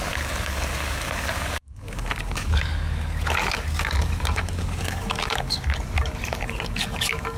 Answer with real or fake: fake